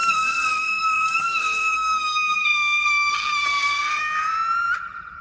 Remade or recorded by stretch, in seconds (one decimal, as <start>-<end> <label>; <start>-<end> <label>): 0.0-3.1 remade; 3.1-3.5 recorded; 3.5-4.0 remade; 4.0-5.2 recorded